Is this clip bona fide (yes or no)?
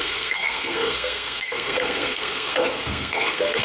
no